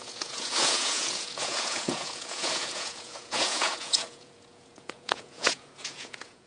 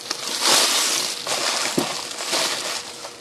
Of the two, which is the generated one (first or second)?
first